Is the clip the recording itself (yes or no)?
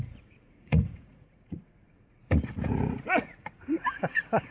no